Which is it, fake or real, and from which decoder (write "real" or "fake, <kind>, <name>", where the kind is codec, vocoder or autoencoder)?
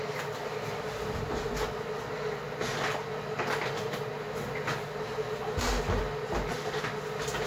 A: real